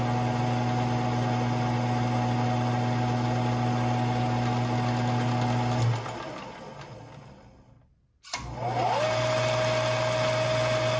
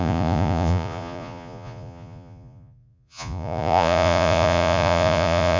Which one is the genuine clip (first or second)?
first